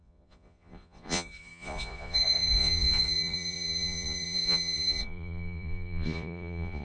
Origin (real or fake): fake